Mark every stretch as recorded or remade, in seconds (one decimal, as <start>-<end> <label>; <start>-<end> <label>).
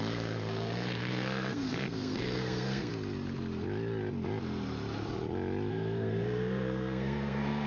0.0-2.9 remade; 2.9-5.7 recorded; 5.7-7.7 remade